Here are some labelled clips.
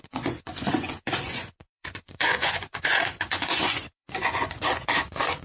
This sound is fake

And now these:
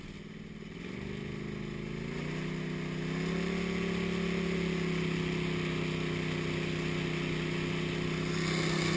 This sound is real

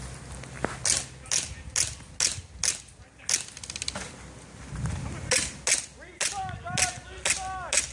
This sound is real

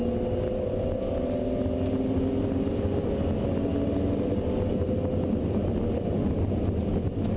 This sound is real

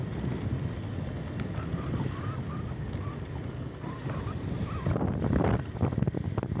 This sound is real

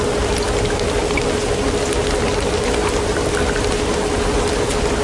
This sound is real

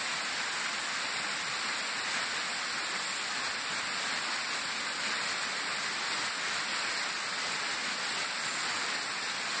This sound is real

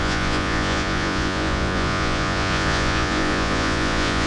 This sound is fake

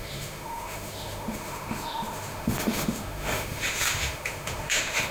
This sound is fake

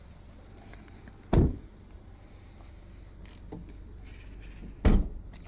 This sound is real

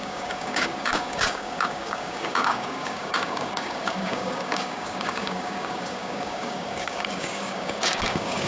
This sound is fake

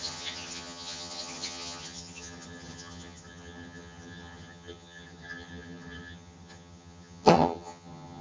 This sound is fake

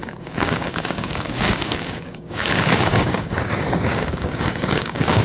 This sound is fake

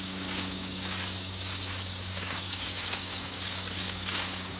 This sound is fake